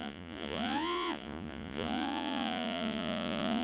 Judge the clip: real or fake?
fake